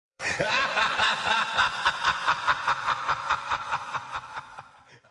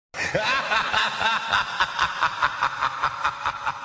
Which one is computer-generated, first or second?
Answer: first